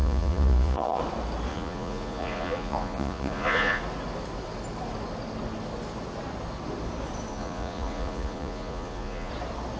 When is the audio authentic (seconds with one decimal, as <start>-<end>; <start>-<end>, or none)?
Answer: 1.0-1.5; 3.8-7.3; 9.3-9.8